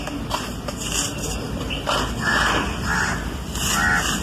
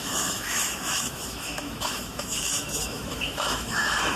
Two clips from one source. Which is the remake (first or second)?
second